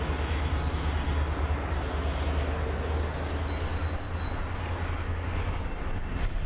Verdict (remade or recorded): recorded